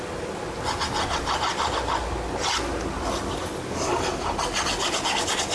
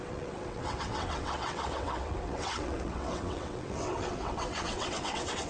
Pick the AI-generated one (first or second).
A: second